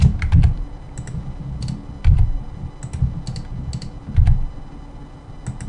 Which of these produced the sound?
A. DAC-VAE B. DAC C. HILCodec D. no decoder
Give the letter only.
D